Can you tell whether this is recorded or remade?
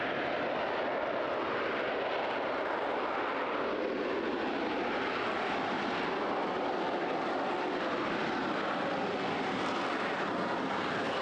recorded